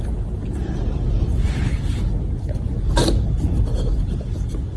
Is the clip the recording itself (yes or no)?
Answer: yes